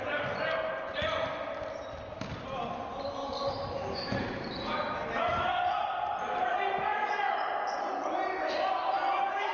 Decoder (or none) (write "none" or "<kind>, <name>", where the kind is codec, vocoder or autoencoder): none